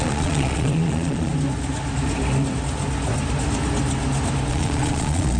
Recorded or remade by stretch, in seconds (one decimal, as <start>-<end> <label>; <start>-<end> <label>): 0.0-1.3 remade; 1.3-4.5 recorded; 4.5-5.4 remade